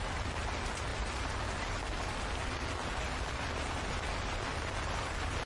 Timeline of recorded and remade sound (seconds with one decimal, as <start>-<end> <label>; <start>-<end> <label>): 0.0-5.5 recorded